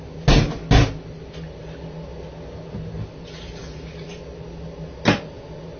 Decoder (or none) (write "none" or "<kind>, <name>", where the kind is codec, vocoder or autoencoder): none